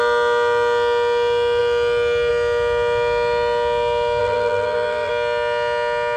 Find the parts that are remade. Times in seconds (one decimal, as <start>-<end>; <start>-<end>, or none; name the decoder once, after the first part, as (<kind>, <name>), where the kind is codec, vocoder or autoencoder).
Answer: 4.2-5.1 (vocoder, BigVGAN v2)